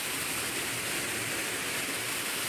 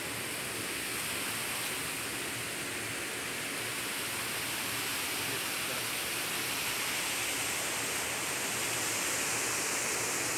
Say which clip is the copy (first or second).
first